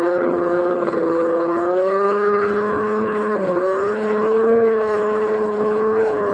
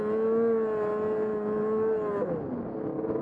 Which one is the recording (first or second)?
second